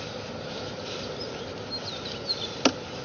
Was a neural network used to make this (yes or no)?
no